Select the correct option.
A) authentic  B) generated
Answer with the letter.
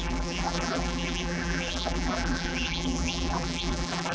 B